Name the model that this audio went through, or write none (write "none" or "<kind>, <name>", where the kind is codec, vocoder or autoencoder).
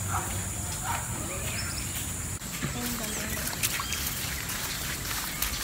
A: none